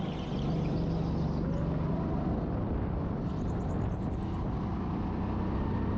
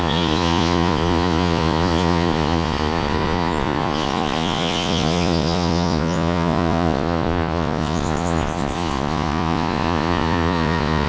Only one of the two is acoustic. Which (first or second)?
first